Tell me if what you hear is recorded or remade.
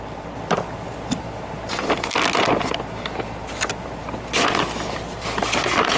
recorded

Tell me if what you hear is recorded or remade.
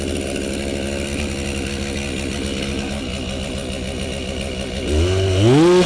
recorded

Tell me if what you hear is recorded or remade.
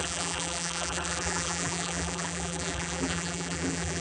remade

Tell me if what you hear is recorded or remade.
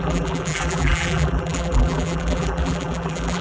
remade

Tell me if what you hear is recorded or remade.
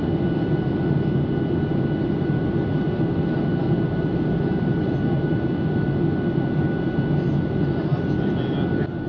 recorded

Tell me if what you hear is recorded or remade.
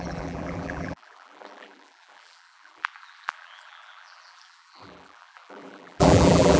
remade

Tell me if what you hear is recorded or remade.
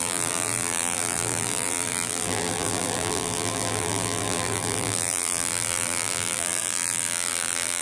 remade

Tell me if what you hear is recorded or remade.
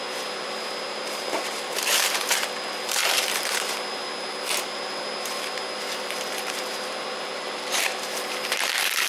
remade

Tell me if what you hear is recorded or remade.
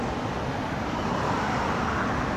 recorded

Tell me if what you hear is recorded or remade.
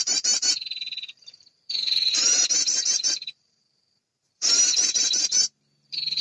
remade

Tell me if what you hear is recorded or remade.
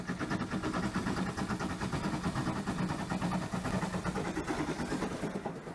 recorded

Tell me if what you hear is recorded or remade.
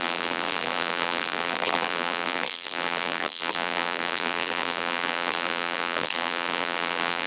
remade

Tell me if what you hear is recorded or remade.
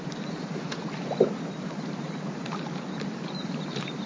remade